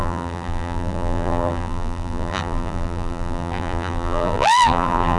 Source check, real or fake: fake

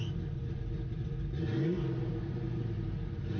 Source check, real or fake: real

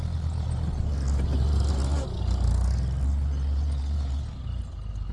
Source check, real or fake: real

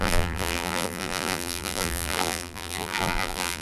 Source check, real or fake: fake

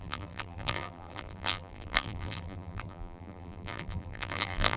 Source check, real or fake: fake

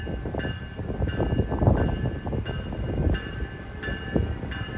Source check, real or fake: real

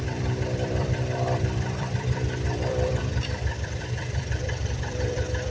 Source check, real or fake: fake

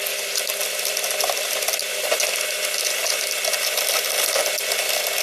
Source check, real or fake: real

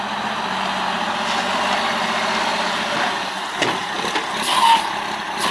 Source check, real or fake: real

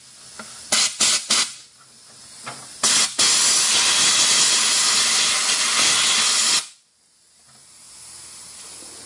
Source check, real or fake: real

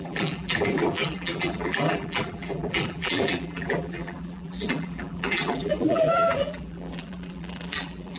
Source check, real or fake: fake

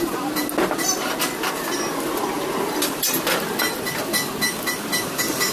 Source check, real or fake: real